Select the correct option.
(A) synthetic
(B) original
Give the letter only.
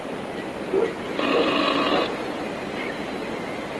B